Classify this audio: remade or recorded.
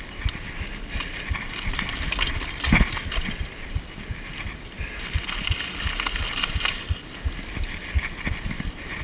recorded